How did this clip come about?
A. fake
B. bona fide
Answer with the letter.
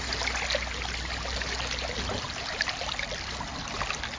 B